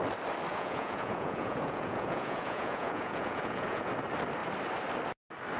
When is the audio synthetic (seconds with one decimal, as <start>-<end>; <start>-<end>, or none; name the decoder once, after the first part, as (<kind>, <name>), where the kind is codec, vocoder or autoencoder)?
0.5-3.9 (vocoder, Vocos)